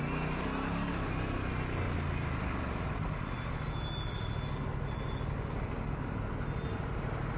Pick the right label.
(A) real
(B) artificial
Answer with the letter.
A